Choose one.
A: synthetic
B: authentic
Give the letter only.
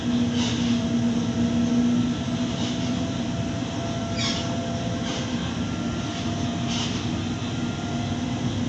B